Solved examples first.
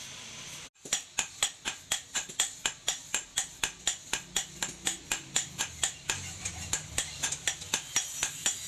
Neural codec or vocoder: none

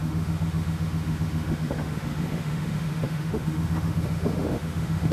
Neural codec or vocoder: autoencoder, DAC-VAE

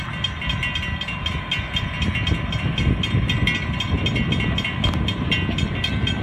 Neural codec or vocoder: none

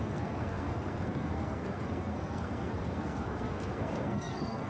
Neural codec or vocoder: codec, SNAC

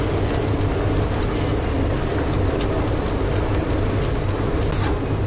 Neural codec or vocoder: none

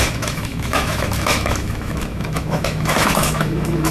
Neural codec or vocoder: autoencoder, DAC-VAE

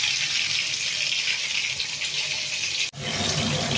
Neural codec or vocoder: none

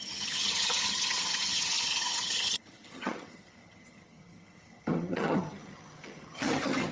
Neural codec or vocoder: vocoder, HiFi-GAN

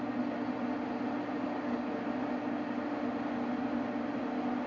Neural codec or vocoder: none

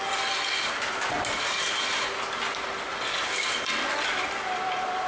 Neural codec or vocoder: none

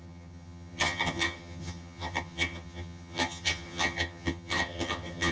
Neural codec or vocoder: vocoder, HiFi-GAN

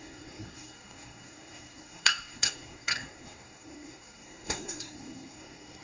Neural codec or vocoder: codec, SNAC